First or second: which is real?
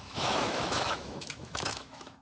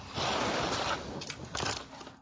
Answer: second